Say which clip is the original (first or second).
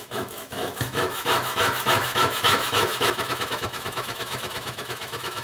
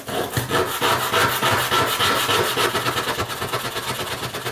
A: second